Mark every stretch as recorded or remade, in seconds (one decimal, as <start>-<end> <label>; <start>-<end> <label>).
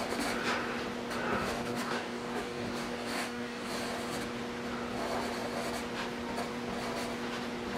0.0-1.4 recorded; 1.4-3.7 remade; 3.7-7.8 recorded